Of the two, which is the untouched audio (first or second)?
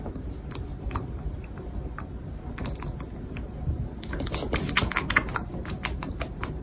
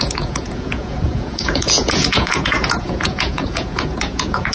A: first